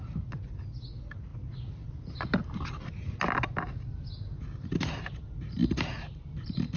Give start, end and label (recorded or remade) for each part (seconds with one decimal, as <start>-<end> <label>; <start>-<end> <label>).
0.0-5.6 recorded; 5.6-6.8 remade